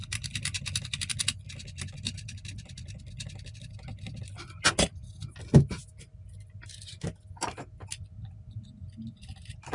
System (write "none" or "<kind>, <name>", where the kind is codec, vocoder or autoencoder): none